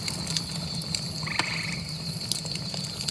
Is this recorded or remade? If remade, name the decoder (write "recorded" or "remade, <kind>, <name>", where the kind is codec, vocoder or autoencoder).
recorded